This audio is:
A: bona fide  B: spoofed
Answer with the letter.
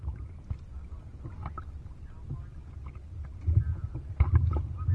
A